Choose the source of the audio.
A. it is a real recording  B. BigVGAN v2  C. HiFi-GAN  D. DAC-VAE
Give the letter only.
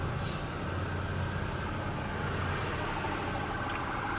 A